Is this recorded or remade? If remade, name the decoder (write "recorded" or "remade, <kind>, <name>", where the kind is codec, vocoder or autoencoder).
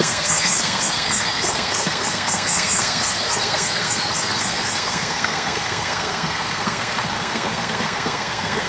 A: remade, codec, SNAC